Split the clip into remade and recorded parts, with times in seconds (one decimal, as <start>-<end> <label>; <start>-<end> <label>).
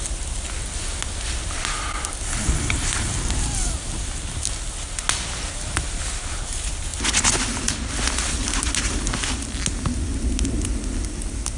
0.0-11.6 recorded